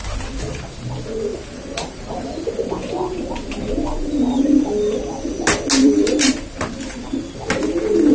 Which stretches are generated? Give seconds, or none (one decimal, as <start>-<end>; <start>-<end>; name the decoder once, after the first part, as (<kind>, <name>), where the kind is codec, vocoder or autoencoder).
1.3-2.1 (vocoder, BigVGAN v2); 5.8-6.6